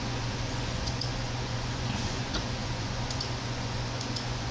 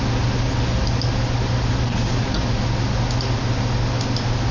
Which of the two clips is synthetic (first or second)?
first